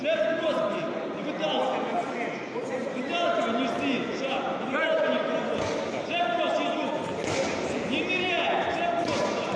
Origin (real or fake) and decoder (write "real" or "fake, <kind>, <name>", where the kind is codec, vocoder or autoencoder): real